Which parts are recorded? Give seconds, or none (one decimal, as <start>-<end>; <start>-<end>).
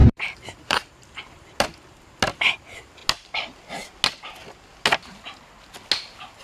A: 0.9-6.4